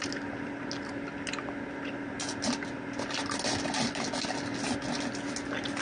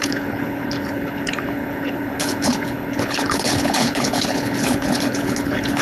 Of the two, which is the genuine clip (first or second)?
first